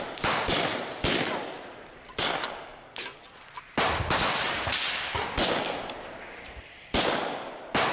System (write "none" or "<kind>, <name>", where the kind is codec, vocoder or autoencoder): none